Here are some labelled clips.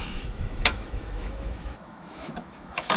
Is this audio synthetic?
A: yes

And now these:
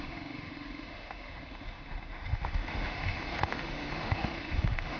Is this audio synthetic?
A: yes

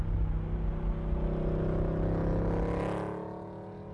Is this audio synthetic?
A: no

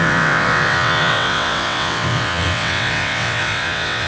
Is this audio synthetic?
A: yes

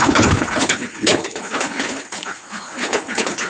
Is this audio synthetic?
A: yes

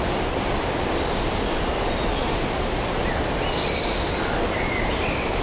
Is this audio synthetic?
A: yes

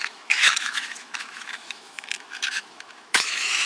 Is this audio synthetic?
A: yes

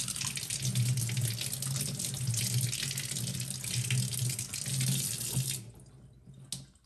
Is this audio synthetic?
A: no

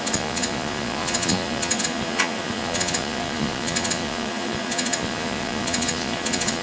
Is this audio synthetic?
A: yes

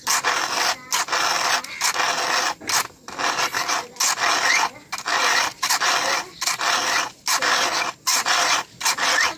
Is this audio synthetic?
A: no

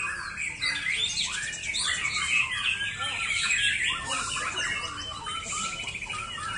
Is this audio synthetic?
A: no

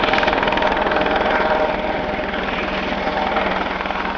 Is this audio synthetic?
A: no